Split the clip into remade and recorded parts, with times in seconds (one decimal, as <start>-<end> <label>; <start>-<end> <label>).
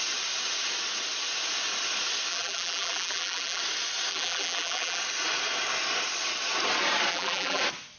0.0-2.3 recorded; 2.3-3.6 remade; 3.6-4.1 recorded; 4.1-5.0 remade; 5.0-7.1 recorded; 7.1-7.6 remade; 7.6-8.0 recorded